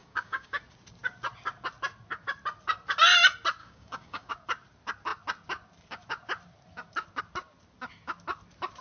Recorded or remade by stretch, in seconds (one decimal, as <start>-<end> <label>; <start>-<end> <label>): 0.0-0.6 remade; 0.6-3.6 recorded; 3.6-4.3 remade; 4.3-8.8 recorded